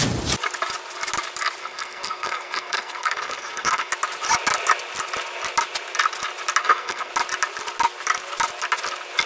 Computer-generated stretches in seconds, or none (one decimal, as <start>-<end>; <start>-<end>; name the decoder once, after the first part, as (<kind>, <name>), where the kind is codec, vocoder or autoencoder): 1.6-3.9 (codec, SNAC); 6.6-7.1